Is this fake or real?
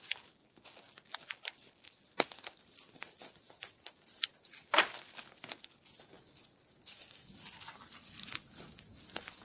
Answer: real